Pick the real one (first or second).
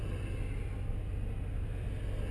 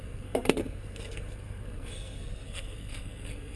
first